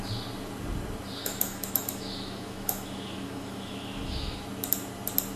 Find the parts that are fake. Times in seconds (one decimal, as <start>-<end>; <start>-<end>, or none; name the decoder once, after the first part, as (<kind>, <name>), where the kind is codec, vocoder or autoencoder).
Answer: 1.2-4.4 (autoencoder, DAC-VAE)